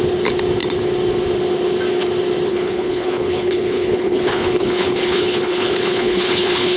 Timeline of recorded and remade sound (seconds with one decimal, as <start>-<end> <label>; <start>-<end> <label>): 0.0-2.5 recorded; 2.5-6.8 remade